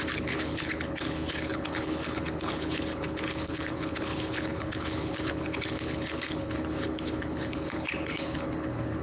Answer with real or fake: fake